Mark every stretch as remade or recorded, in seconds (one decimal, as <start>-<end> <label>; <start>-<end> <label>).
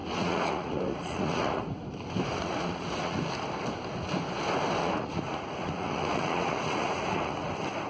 0.0-1.6 remade; 1.6-2.3 recorded; 2.3-3.2 remade; 3.2-4.8 recorded; 4.8-7.5 remade; 7.5-7.9 recorded